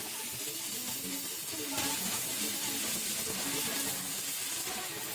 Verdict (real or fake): real